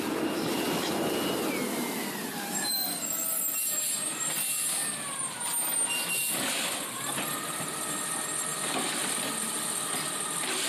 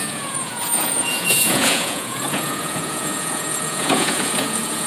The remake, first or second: second